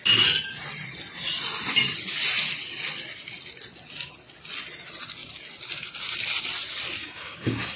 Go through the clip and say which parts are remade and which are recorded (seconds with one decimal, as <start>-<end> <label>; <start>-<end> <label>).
0.0-7.0 recorded; 7.0-7.8 remade